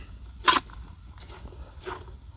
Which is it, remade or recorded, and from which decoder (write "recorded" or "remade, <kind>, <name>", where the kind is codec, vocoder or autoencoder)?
recorded